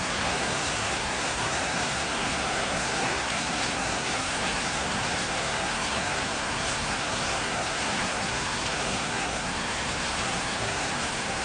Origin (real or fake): fake